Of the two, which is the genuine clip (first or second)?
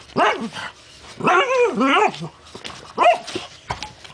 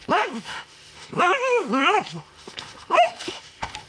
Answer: first